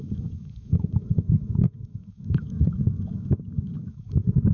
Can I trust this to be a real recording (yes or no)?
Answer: no